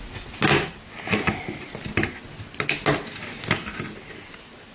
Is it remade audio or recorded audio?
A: recorded